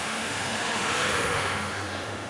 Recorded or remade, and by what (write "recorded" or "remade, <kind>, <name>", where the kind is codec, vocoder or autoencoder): remade, autoencoder, DAC-VAE